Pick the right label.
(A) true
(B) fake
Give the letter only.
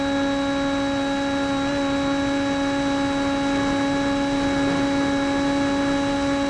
A